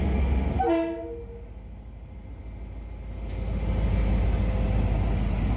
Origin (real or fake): real